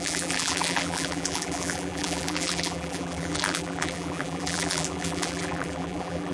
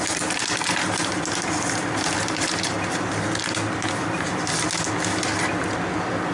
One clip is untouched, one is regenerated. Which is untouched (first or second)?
second